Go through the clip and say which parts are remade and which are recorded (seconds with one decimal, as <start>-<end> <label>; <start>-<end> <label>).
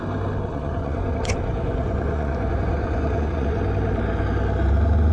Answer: 0.0-0.5 recorded; 0.5-3.6 remade; 3.6-5.1 recorded